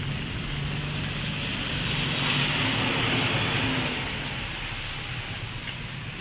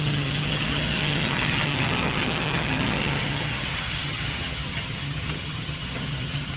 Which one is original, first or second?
first